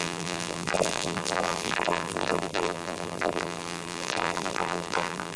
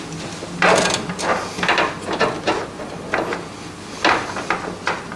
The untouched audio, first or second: second